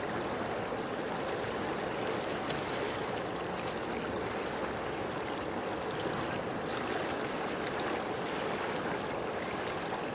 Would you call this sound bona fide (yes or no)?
yes